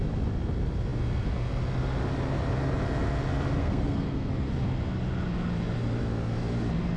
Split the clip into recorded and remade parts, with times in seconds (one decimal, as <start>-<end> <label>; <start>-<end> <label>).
0.0-3.6 recorded; 3.6-4.3 remade; 4.3-7.0 recorded